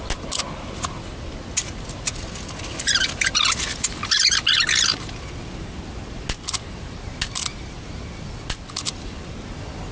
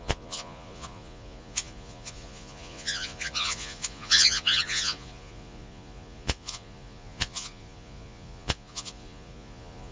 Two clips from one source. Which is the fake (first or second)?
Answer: second